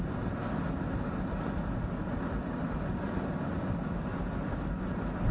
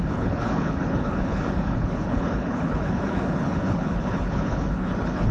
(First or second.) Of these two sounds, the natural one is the first